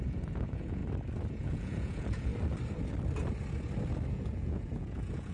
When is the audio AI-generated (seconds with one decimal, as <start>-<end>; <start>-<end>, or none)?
0.0-0.8; 1.3-2.3; 4.1-5.3